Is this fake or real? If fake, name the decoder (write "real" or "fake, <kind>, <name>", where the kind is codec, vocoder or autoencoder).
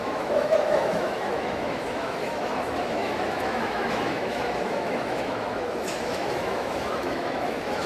fake, autoencoder, DAC-VAE